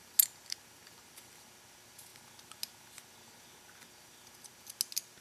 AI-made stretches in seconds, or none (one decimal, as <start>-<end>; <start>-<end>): none

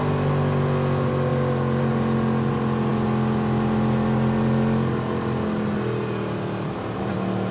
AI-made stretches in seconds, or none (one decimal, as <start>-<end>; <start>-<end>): none

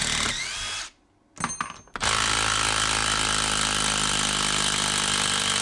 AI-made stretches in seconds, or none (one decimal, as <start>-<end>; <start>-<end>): none

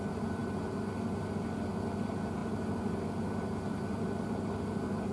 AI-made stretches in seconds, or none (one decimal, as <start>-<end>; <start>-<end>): none

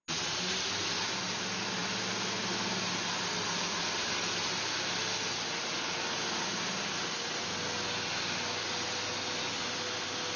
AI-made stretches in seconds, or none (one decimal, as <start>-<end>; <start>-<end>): none

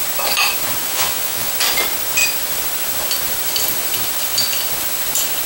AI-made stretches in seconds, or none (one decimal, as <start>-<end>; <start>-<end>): 0.8-1.5